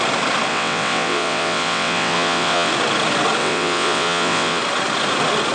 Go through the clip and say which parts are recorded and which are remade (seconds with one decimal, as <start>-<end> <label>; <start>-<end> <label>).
0.0-0.5 recorded; 0.5-2.7 remade; 2.7-3.4 recorded; 3.4-4.6 remade; 4.6-5.5 recorded